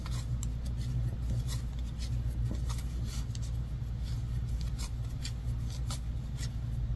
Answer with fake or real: real